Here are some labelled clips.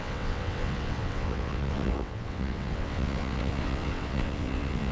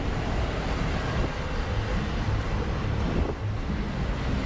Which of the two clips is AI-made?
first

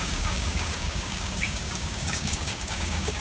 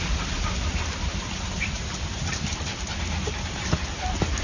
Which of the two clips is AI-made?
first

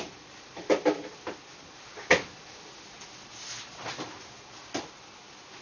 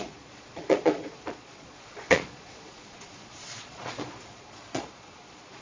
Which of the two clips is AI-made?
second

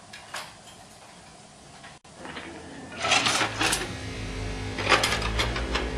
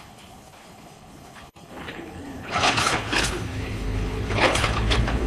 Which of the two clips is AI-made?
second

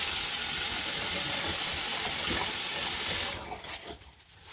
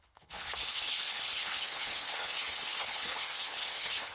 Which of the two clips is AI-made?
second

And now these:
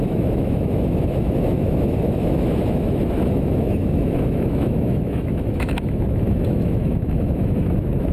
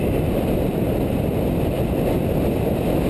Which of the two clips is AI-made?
first